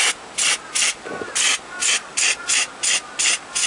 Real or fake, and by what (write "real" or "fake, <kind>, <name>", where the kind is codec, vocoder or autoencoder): real